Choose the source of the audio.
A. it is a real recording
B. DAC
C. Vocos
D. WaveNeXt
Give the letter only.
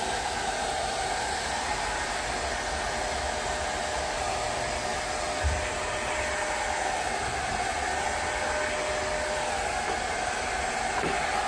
A